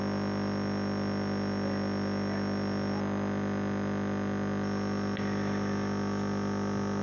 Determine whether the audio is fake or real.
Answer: real